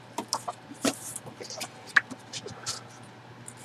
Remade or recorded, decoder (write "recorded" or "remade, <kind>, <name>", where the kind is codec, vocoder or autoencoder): recorded